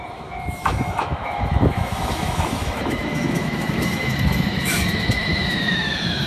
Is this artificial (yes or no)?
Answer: yes